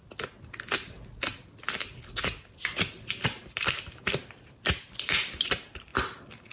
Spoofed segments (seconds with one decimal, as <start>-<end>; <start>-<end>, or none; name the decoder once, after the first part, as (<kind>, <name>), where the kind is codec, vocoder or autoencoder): 0.0-5.9 (vocoder, BigVGAN v2)